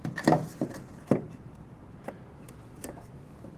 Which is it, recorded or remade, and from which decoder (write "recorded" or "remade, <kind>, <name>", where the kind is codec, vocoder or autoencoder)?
recorded